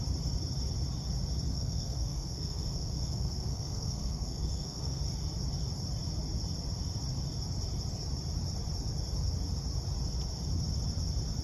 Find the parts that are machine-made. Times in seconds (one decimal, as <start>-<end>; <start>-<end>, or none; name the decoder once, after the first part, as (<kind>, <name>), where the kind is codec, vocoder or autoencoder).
1.5-5.0 (codec, SNAC)